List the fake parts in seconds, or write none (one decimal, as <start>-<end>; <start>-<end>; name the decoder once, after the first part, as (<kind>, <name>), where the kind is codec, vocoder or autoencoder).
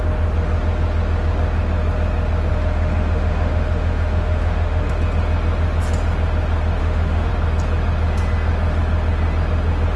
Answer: 2.5-4.9 (autoencoder, DAC-VAE); 6.8-7.3